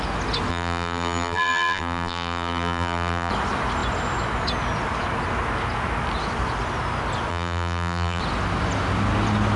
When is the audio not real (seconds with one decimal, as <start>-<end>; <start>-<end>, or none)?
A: 0.5-3.3; 7.3-8.2